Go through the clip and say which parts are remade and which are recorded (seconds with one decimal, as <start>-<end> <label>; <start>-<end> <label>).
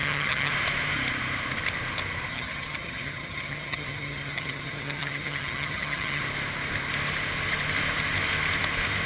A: 0.0-0.5 remade; 0.5-2.3 recorded; 2.3-6.2 remade; 6.2-9.1 recorded